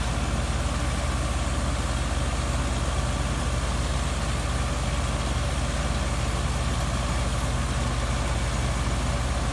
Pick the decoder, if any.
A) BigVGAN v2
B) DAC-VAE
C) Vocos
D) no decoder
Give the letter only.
D